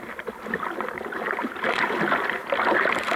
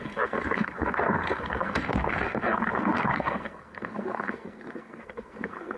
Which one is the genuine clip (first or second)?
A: first